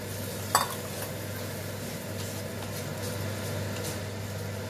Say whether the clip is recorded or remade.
recorded